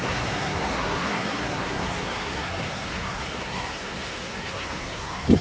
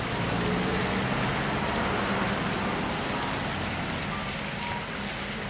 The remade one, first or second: first